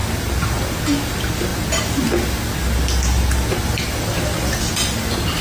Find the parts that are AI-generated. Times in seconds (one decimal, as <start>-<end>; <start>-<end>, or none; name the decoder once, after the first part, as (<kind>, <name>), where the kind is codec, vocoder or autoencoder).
none